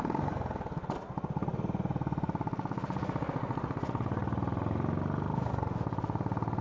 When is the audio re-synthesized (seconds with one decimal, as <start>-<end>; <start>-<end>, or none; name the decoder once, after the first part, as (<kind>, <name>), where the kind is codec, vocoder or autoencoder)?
none